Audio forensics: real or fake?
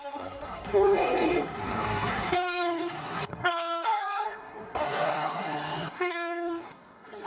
fake